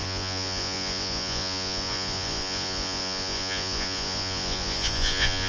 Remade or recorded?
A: remade